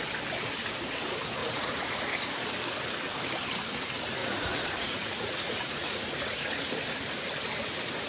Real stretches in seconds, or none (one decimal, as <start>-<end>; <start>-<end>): 0.0-1.4; 2.1-4.2; 6.7-8.1